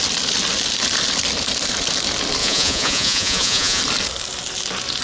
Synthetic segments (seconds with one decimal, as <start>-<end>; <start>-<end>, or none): 2.4-3.8